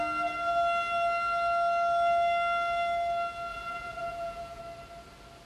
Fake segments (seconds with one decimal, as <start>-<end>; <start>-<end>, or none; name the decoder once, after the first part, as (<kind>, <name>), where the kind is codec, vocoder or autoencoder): 3.5-4.6 (vocoder, Vocos)